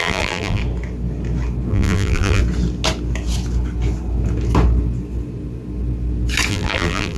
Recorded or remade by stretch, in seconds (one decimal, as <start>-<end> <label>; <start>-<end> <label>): 0.0-0.6 remade; 0.6-1.7 recorded; 1.7-2.4 remade; 2.4-6.5 recorded; 6.5-7.2 remade